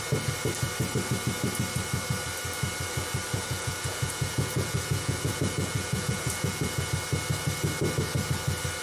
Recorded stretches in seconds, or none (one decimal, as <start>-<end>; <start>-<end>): 0.0-3.3; 6.9-8.8